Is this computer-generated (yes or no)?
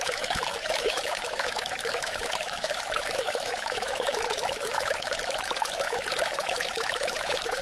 yes